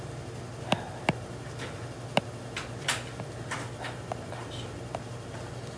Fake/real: real